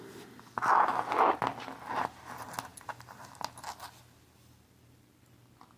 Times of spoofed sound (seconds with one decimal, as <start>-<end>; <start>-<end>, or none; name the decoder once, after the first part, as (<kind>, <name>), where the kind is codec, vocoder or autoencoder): none